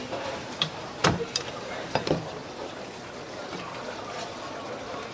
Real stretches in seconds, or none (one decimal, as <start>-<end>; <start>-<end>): 2.4-5.1

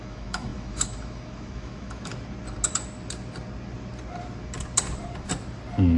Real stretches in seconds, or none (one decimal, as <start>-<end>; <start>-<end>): 2.1-6.0

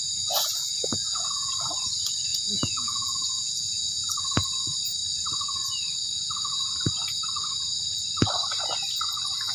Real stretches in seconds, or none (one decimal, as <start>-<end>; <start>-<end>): 0.0-0.9; 1.5-2.3; 4.1-9.5

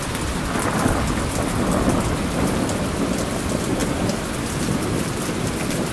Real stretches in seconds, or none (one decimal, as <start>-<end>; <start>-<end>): 0.0-3.8; 4.7-5.9

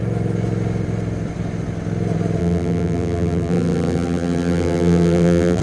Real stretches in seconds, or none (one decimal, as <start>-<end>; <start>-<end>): 0.0-2.4

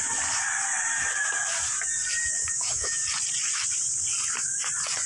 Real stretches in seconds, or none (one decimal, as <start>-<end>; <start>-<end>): 0.0-2.4; 3.0-5.1

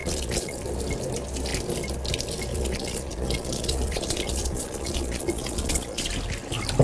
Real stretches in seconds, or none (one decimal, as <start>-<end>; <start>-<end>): 0.6-2.5; 6.1-6.8